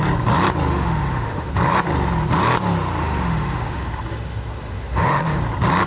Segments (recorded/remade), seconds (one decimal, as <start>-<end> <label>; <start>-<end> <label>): 0.0-0.7 recorded; 0.7-1.5 remade; 1.5-3.0 recorded; 3.0-5.4 remade; 5.4-5.9 recorded